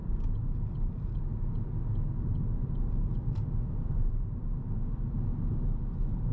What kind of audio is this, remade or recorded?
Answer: recorded